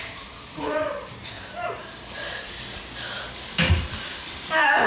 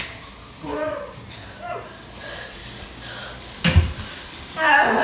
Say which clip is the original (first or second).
second